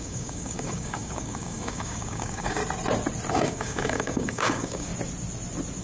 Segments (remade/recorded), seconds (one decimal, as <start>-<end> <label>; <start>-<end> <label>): 0.0-2.6 remade; 2.6-3.3 recorded; 3.3-4.9 remade; 4.9-5.8 recorded